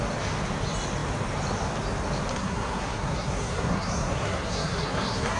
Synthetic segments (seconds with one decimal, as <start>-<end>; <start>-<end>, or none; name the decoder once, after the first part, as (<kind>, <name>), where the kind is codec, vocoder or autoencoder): 2.3-5.4 (codec, SNAC)